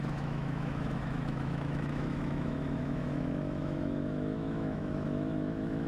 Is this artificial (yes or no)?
yes